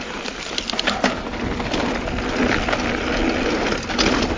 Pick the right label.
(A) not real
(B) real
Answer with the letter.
B